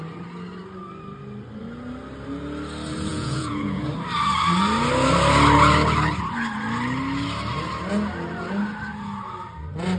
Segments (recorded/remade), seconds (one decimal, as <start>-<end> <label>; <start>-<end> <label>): 0.0-3.1 recorded; 3.1-3.8 remade; 3.8-10.0 recorded